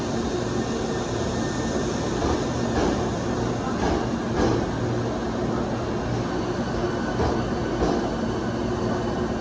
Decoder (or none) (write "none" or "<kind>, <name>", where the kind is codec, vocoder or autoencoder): none